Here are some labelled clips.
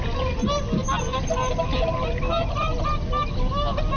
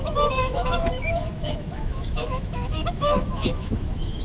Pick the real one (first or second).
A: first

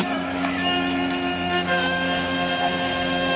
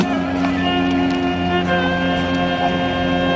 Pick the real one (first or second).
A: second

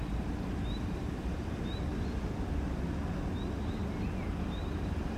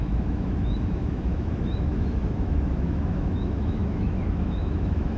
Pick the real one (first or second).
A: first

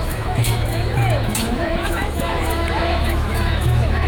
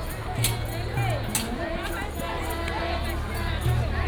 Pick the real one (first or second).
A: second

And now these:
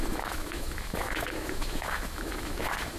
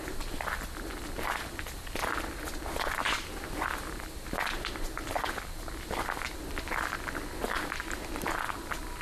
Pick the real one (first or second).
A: second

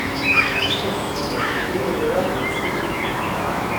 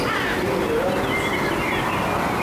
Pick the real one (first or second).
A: second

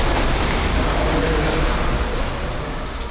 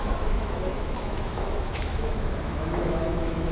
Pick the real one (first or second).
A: first